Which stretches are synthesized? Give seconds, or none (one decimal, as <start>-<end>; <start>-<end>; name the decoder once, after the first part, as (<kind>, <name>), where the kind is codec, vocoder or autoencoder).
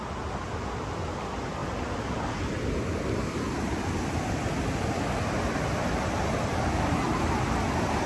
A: none